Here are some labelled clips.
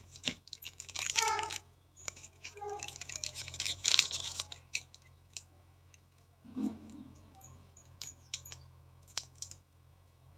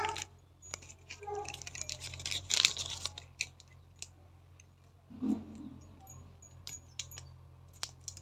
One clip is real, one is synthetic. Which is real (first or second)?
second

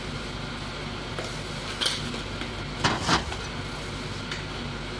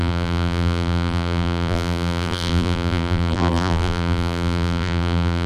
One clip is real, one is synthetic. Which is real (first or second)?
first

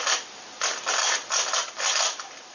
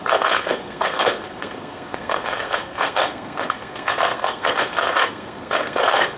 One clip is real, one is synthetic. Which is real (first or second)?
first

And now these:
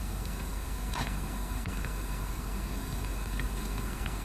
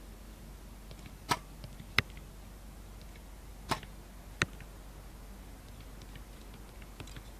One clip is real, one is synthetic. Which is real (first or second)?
second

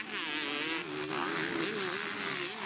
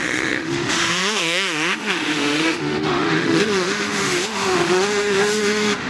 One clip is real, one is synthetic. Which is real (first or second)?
first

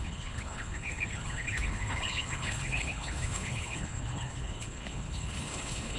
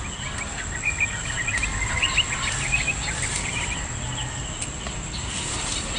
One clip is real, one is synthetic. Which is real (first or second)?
second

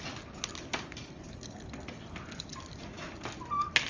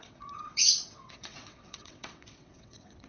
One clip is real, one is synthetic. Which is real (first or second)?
first